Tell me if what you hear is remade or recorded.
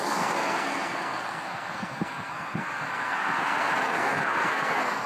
remade